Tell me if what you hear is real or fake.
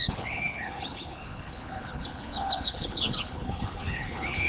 fake